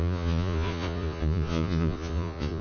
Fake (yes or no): yes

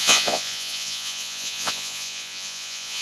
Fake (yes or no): yes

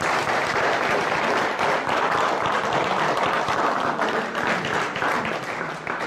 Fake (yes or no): yes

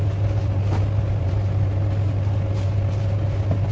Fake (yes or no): no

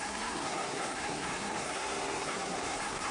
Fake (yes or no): yes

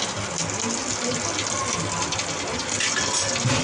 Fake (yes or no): no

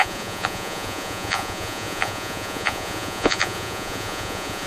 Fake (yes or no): yes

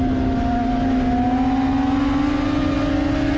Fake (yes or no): no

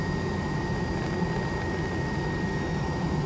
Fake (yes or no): no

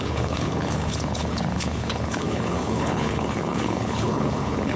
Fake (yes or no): yes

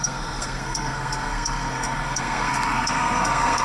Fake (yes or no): yes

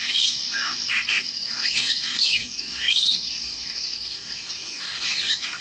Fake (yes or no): yes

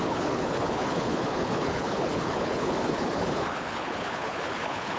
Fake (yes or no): yes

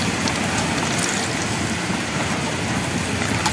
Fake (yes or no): no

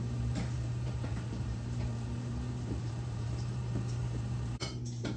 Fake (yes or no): yes